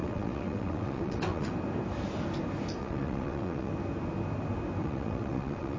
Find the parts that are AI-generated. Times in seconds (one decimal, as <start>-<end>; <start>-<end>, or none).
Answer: 0.0-1.5; 2.8-3.7; 4.8-5.8